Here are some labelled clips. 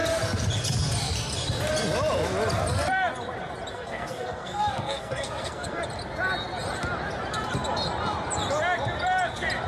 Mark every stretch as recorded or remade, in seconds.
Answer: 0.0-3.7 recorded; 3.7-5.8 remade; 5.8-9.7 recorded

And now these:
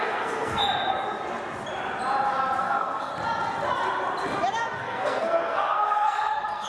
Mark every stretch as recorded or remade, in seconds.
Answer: 0.0-0.6 remade; 0.6-2.6 recorded; 2.6-3.1 remade; 3.1-4.8 recorded; 4.8-6.7 remade

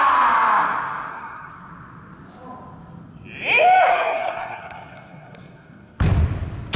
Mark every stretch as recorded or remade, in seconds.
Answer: 0.0-1.1 recorded; 1.1-1.7 remade; 1.7-3.9 recorded; 3.9-6.0 remade; 6.0-6.8 recorded

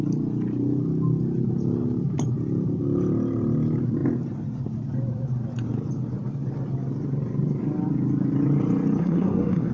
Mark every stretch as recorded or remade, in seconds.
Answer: 0.0-9.0 recorded; 9.0-9.7 remade

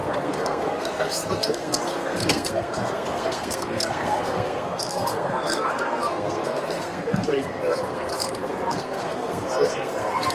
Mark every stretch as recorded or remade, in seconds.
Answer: 0.0-10.3 remade